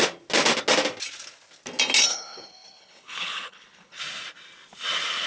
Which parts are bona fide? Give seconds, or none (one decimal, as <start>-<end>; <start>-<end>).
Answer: 0.0-2.1; 4.0-5.3